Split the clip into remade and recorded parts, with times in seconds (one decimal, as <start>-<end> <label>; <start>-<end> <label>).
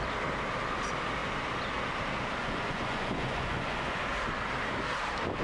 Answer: 0.0-2.4 recorded; 2.4-4.0 remade; 4.0-5.4 recorded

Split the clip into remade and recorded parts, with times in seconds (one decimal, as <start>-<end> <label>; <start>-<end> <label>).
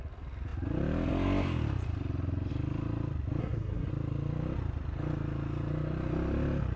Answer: 0.0-3.4 recorded; 3.4-3.9 remade; 3.9-6.8 recorded